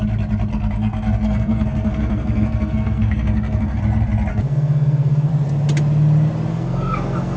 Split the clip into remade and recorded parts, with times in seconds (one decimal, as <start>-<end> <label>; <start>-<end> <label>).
0.0-0.5 recorded; 0.5-3.8 remade; 3.8-4.3 recorded; 4.3-5.3 remade; 5.3-6.5 recorded; 6.5-7.4 remade

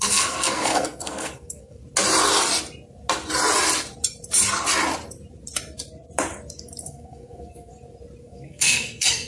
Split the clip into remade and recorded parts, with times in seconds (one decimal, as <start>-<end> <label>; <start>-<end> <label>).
0.0-1.8 remade; 1.8-6.8 recorded; 6.8-7.7 remade; 7.7-8.2 recorded; 8.2-9.3 remade

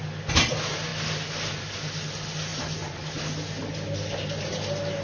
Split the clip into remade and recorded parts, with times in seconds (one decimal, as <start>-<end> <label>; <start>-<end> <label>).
0.0-5.0 recorded

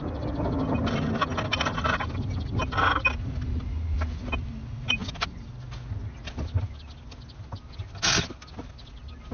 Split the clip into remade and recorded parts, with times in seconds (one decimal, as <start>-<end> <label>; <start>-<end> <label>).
0.0-9.3 recorded